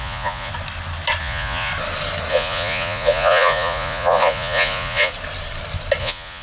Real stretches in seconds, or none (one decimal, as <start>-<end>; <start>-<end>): 0.5-1.2; 1.7-2.3; 5.1-6.0